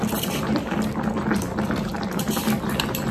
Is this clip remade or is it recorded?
remade